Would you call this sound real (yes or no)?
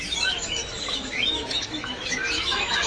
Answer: no